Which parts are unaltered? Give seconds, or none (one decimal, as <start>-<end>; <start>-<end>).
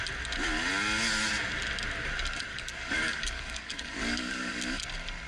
0.0-2.5; 4.5-5.3